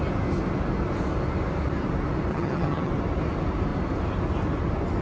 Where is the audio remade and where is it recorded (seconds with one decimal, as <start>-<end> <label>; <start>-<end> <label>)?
0.0-2.3 recorded; 2.3-2.9 remade; 2.9-5.0 recorded